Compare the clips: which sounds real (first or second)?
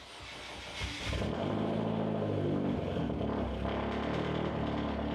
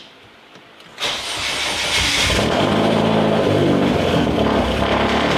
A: first